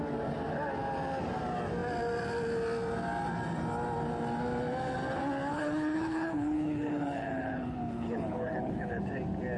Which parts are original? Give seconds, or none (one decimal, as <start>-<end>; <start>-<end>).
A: 0.0-5.5; 9.0-9.6